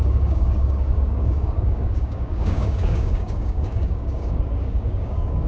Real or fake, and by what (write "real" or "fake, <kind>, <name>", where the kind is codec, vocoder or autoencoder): fake, codec, DAC